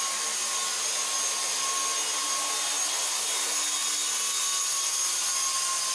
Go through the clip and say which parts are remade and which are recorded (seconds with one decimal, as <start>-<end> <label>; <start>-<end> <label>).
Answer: 0.0-5.9 recorded